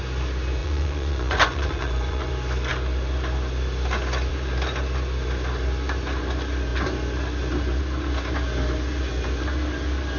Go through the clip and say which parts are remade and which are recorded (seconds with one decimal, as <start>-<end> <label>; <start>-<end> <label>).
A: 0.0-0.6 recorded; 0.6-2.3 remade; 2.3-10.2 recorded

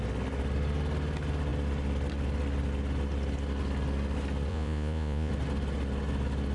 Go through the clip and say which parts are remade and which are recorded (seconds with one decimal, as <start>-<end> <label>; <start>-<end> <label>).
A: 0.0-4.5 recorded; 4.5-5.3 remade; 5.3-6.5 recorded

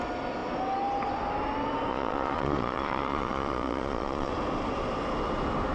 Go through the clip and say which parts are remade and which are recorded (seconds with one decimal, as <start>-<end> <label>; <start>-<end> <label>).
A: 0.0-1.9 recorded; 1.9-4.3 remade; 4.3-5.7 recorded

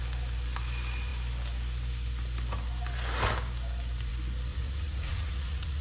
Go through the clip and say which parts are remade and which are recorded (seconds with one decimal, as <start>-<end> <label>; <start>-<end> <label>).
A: 0.0-4.5 recorded; 4.5-5.8 remade

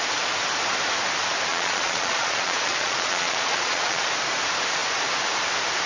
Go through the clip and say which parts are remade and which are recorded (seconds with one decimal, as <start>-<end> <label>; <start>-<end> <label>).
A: 0.0-1.5 recorded; 1.5-4.1 remade; 4.1-5.9 recorded

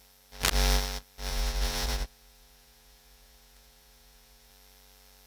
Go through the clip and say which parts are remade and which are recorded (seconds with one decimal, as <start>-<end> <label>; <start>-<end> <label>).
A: 0.0-1.3 recorded; 1.3-4.5 remade; 4.5-5.3 recorded

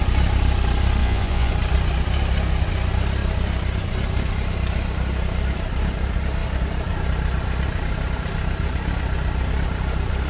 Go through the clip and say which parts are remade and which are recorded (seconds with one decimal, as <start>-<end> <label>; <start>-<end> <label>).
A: 0.0-1.0 recorded; 1.0-1.5 remade; 1.5-10.3 recorded